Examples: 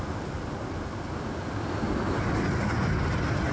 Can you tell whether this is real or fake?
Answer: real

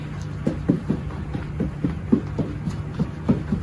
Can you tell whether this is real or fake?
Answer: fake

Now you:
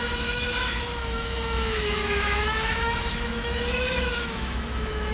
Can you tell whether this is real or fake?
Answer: fake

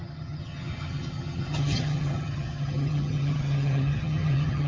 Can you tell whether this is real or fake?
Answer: fake